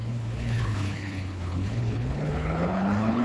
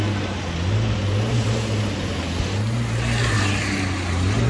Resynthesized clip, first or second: first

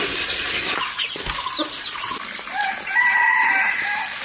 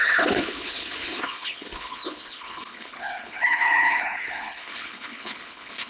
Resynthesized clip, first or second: second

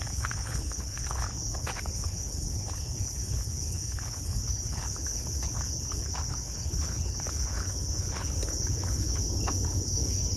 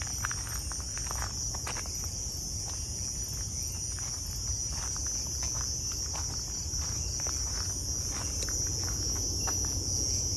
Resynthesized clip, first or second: first